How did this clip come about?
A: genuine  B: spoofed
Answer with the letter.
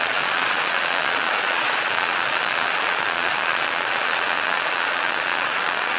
B